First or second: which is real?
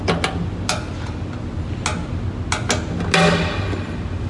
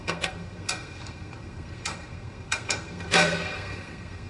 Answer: first